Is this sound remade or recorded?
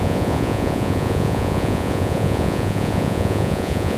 remade